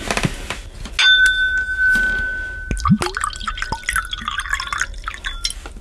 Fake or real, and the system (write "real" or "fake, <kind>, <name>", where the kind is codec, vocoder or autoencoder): real